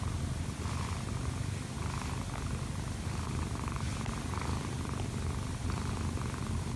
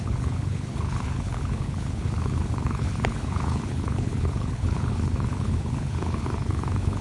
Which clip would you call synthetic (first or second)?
second